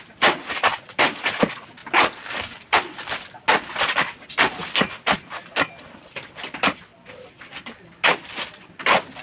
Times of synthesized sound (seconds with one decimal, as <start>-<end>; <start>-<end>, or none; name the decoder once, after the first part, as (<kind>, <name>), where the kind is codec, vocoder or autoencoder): none